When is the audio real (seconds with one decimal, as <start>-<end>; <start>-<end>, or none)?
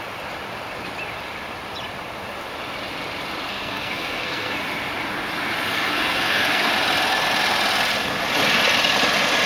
0.0-3.5; 4.6-5.7; 6.7-9.5